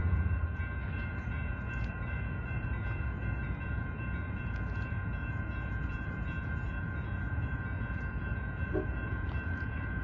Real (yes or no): no